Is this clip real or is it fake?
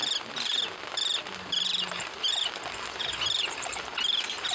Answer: real